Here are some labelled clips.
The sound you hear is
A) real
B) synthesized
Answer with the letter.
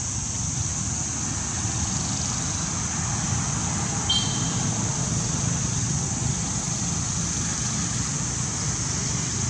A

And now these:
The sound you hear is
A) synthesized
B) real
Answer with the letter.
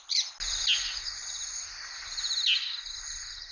B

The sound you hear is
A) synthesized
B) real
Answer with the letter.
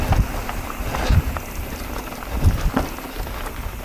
B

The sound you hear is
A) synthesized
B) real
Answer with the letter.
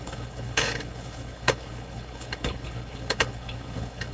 A